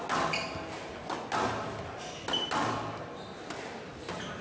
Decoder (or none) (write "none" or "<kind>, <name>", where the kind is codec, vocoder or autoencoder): none